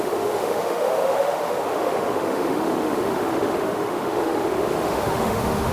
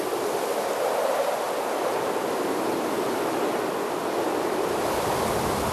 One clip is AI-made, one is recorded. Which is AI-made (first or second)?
first